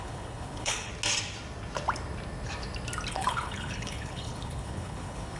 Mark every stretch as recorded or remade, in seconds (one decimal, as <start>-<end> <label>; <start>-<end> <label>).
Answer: 0.0-0.9 remade; 0.9-3.1 recorded; 3.1-5.4 remade